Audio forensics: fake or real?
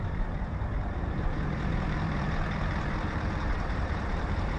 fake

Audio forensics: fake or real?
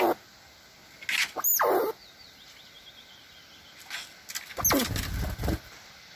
real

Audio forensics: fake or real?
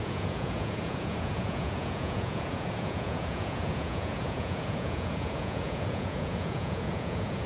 fake